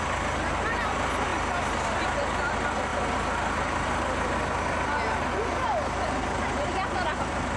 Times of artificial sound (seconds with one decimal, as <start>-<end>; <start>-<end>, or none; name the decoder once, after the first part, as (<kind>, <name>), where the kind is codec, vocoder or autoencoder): none